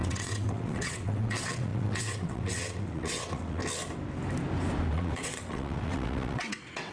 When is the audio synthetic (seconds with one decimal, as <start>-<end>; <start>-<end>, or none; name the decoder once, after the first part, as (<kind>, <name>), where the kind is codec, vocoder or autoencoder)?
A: 0.0-3.6 (vocoder, WaveNeXt); 4.9-6.9